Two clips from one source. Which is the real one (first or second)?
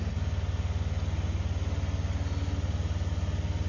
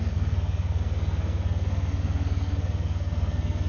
first